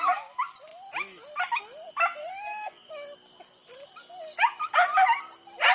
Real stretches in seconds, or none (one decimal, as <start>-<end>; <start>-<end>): 0.0-2.2; 2.9-5.7